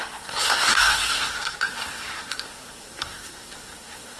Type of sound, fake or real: fake